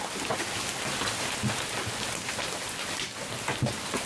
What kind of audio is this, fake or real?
real